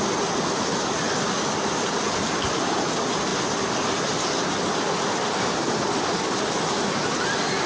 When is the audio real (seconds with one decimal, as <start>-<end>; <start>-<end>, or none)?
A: 0.0-7.7